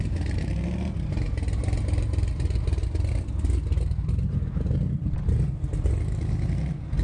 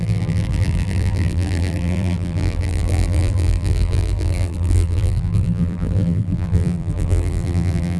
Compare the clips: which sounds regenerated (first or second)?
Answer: second